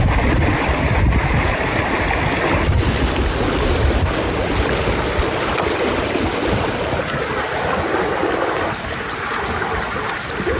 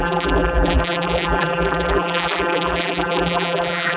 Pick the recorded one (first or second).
first